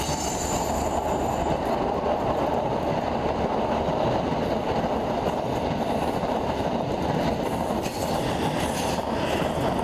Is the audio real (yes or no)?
yes